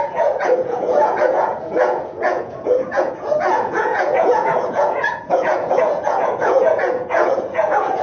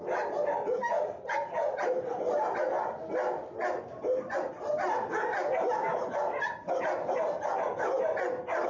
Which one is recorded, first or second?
second